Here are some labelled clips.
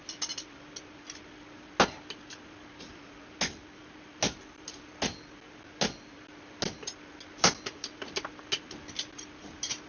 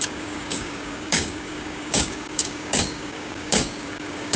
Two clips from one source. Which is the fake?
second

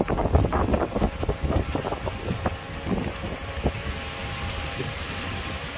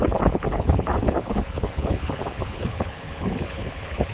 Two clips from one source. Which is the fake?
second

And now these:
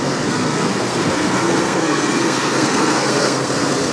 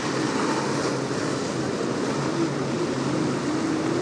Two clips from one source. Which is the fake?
first